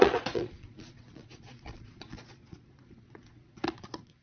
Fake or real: fake